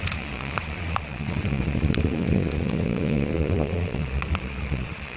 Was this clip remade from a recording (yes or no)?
yes